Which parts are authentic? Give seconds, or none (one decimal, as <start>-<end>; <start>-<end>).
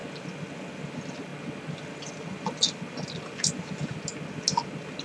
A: 0.0-5.0